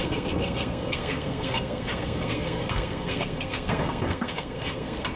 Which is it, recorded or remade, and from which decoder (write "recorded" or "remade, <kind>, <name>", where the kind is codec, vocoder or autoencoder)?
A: remade, codec, SNAC